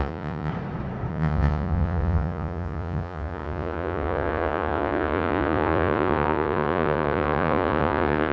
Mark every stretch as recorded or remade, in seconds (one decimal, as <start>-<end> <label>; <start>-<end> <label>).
0.0-0.5 remade; 0.5-1.1 recorded; 1.1-8.3 remade